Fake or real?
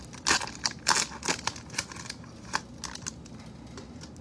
real